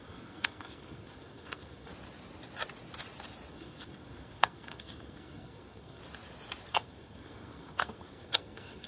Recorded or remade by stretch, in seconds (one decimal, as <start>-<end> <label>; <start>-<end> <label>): 0.0-1.9 remade; 1.9-3.5 recorded; 3.5-6.0 remade; 6.0-6.7 recorded; 6.7-8.9 remade